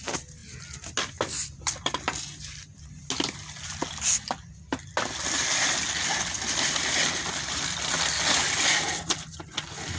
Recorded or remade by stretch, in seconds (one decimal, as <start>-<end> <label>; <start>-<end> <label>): 0.0-10.0 recorded